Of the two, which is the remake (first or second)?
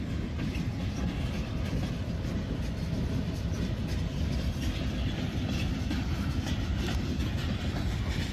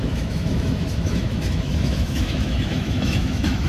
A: second